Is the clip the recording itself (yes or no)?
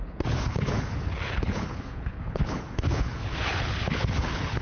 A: no